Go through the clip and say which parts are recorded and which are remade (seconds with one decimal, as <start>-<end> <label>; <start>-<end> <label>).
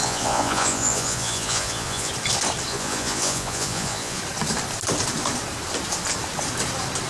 0.0-2.1 remade; 2.1-2.7 recorded; 2.7-4.2 remade; 4.2-7.1 recorded